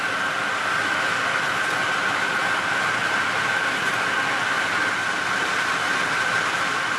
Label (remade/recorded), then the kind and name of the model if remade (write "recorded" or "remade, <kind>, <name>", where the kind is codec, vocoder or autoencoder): remade, vocoder, BigVGAN v2